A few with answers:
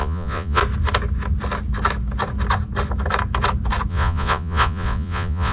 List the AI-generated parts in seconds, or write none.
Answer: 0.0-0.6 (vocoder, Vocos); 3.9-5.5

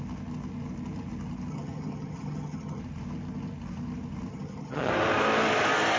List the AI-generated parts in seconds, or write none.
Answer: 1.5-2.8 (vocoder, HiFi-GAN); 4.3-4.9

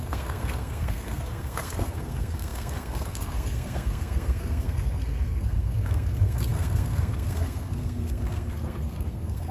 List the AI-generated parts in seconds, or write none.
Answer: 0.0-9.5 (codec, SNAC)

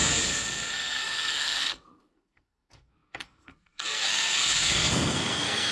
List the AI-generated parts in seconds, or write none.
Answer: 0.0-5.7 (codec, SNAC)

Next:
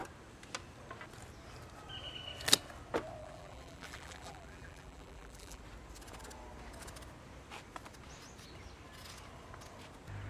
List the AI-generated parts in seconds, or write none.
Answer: 3.2-5.6 (vocoder, BigVGAN v2)

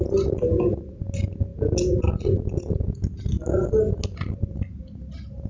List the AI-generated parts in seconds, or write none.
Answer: none

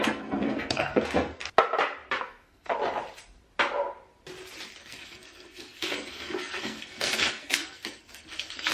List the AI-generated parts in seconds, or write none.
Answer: 0.0-1.4 (codec, SNAC); 2.2-2.7; 4.8-8.7